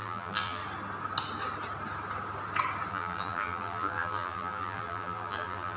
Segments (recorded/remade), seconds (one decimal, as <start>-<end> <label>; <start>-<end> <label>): 0.0-0.6 remade; 0.6-2.9 recorded; 2.9-5.8 remade